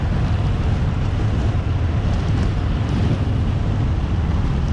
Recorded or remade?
recorded